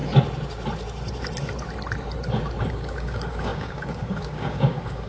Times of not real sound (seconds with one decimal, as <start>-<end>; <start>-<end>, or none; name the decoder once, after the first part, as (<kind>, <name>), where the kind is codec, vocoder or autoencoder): 2.7-5.1 (codec, DAC)